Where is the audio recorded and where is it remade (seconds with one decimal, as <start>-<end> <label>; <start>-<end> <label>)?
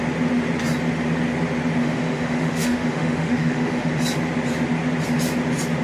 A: 0.0-1.8 recorded; 1.8-3.9 remade; 3.9-5.8 recorded